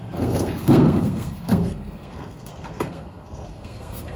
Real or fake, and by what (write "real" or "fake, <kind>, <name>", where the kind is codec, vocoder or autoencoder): fake, codec, SNAC